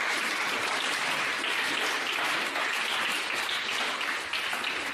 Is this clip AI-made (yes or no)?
no